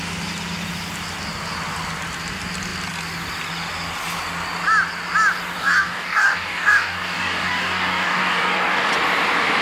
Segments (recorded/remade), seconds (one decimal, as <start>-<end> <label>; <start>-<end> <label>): 0.0-5.6 recorded; 5.6-8.9 remade; 8.9-9.6 recorded